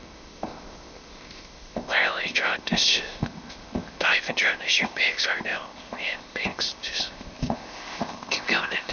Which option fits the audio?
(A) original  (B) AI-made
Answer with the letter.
B